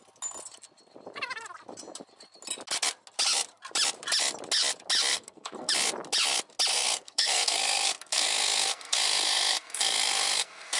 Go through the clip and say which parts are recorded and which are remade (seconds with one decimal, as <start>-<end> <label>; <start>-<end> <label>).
0.0-5.1 recorded; 5.1-5.7 remade; 5.7-6.7 recorded; 6.7-10.8 remade